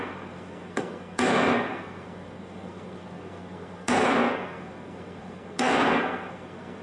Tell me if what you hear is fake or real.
fake